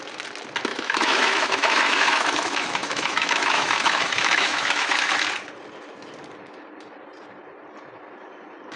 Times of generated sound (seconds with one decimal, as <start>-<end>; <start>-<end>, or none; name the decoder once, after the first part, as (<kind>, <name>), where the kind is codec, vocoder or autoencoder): 0.7-5.1 (autoencoder, DAC-VAE)